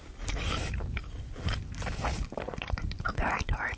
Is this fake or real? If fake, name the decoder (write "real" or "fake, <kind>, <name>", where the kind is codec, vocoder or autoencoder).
fake, vocoder, BigVGAN v2